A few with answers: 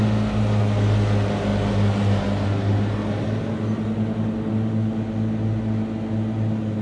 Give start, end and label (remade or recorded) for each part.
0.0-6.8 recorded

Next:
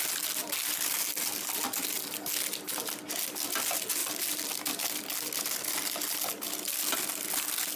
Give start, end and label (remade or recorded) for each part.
0.0-7.8 recorded

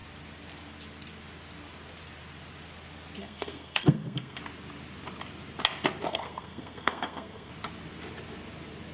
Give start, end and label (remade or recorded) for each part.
0.0-3.2 recorded; 3.2-4.4 remade; 4.4-6.1 recorded; 6.1-7.5 remade; 7.5-8.9 recorded

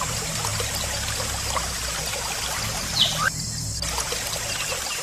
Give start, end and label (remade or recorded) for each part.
0.0-5.0 recorded

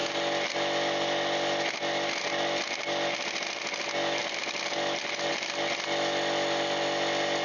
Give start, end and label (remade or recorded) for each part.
0.0-7.4 recorded

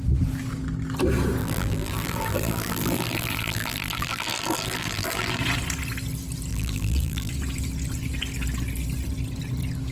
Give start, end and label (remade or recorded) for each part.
0.0-1.4 recorded; 1.4-5.4 remade; 5.4-6.5 recorded; 6.5-7.3 remade; 7.3-9.9 recorded